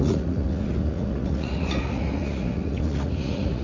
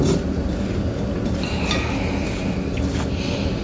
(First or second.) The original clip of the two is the second